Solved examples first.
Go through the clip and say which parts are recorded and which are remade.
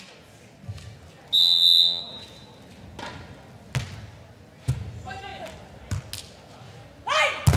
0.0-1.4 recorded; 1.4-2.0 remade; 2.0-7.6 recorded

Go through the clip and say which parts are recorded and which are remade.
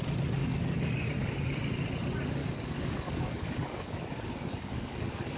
0.0-0.4 recorded; 0.4-1.1 remade; 1.1-2.4 recorded; 2.4-5.4 remade